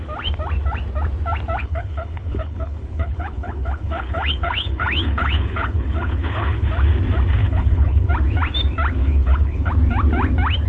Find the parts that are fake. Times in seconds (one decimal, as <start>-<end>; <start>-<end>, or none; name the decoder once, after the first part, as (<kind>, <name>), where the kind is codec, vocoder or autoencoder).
1.6-6.7 (codec, HILCodec); 7.4-8.1; 9.0-9.7